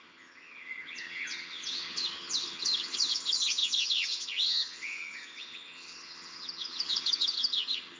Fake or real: fake